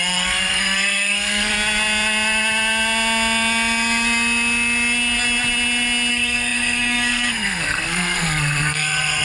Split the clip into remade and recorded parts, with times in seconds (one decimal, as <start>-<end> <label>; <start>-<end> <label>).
0.0-1.5 remade; 1.5-6.1 recorded; 6.1-9.2 remade